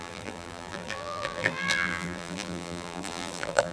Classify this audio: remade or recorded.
remade